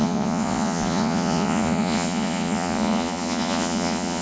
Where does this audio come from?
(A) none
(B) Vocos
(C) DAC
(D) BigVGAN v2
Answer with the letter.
B